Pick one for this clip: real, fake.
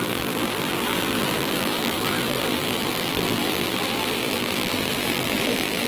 fake